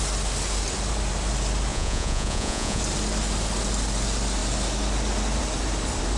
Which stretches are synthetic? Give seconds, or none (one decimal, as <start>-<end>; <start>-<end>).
1.7-2.8